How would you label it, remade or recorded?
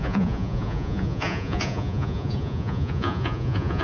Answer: remade